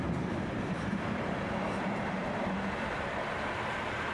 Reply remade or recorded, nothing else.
remade